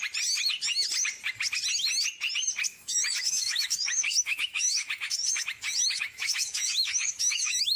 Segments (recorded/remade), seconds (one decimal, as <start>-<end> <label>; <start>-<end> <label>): 0.0-2.7 recorded; 2.7-7.8 remade